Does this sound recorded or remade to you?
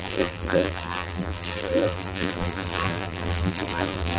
remade